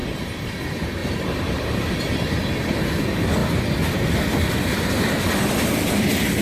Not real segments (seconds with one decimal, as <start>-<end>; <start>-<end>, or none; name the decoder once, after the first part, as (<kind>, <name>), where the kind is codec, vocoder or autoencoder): 0.0-0.6 (vocoder, BigVGAN v2); 1.0-2.1